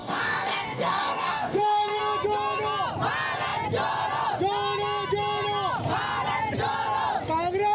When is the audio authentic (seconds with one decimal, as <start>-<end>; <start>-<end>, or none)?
2.0-7.7